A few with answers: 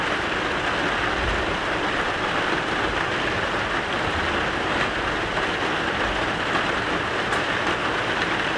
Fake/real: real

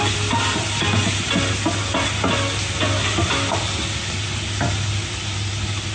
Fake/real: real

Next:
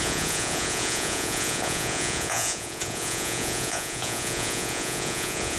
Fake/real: fake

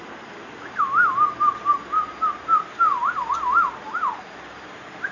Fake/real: real